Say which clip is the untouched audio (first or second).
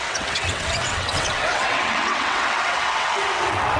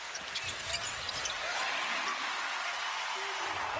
second